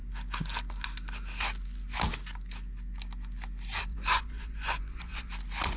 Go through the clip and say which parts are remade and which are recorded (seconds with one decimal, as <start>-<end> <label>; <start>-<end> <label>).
0.0-3.9 recorded; 3.9-5.3 remade; 5.3-5.8 recorded

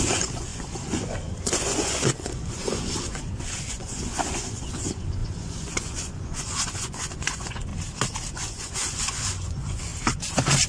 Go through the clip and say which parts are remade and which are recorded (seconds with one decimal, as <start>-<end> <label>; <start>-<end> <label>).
0.0-7.7 remade; 7.7-8.3 recorded; 8.3-9.9 remade; 9.9-10.7 recorded

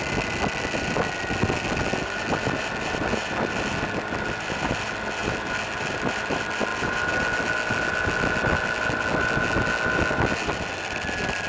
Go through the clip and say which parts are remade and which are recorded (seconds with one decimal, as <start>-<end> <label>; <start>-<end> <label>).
0.0-11.5 recorded

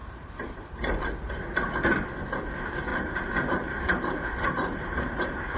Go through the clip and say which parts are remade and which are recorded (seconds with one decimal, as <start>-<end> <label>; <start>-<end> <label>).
0.0-1.0 remade; 1.0-2.9 recorded; 2.9-5.6 remade

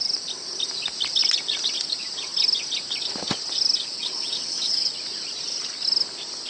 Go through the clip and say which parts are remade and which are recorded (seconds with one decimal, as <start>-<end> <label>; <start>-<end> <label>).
0.0-3.9 recorded; 3.9-4.9 remade; 4.9-6.5 recorded

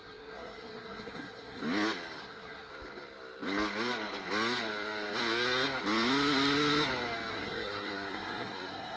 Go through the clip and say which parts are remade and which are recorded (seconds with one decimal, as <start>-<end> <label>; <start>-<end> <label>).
0.0-1.6 remade; 1.6-2.2 recorded; 2.2-2.7 remade; 2.7-7.3 recorded; 7.3-9.0 remade

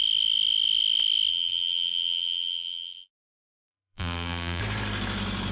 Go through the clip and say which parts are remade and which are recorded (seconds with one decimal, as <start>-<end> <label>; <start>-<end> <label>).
0.0-1.3 recorded; 1.3-4.6 remade; 4.6-5.5 recorded

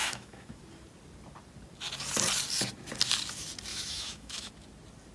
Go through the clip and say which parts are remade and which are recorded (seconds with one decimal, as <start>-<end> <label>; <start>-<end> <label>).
0.0-0.6 remade; 0.6-3.7 recorded; 3.7-4.5 remade; 4.5-5.1 recorded